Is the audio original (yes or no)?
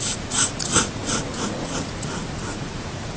no